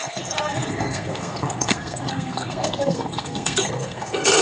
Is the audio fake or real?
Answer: fake